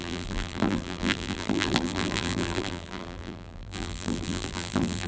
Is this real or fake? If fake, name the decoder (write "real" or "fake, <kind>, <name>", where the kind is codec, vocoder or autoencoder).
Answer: fake, vocoder, BigVGAN v2